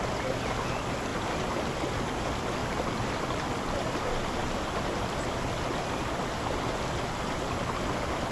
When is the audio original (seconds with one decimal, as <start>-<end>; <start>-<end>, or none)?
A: 0.0-1.1; 2.0-8.3